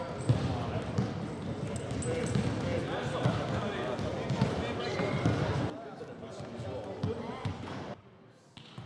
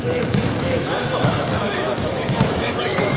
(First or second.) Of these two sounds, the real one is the first